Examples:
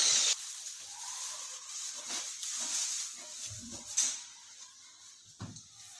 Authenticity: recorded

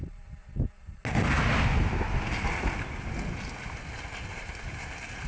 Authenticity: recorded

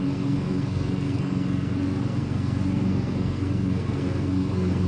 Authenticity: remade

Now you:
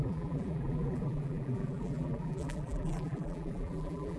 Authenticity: remade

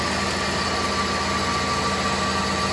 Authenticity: recorded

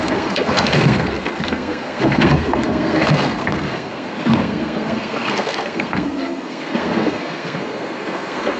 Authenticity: remade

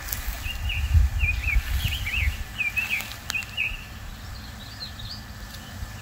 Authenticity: recorded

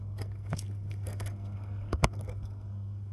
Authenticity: remade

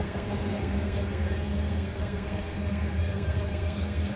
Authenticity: remade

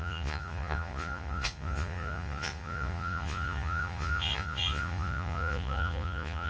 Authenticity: remade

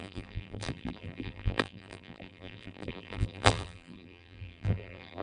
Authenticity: remade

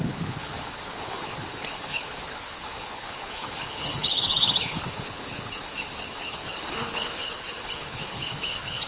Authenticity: remade